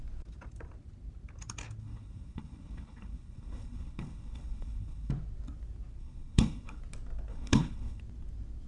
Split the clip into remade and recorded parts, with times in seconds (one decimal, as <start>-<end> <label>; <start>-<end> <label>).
0.0-1.8 recorded; 1.8-5.1 remade; 5.1-6.0 recorded; 6.0-6.8 remade; 6.8-7.3 recorded; 7.3-8.0 remade; 8.0-8.7 recorded